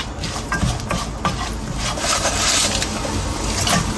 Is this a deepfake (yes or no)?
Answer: no